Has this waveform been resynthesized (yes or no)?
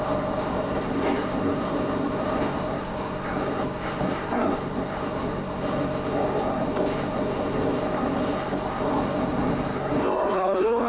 yes